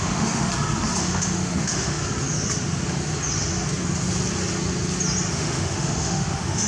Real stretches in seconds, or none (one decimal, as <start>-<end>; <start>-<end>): 0.5-1.0; 2.0-5.3